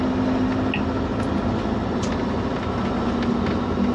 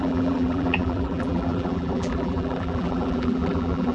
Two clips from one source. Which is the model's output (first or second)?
second